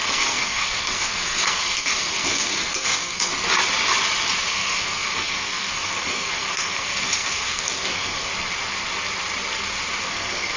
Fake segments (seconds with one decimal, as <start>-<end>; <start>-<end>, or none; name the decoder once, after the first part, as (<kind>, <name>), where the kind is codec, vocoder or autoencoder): 0.0-3.3 (codec, SNAC); 4.5-8.3; 10.0-10.6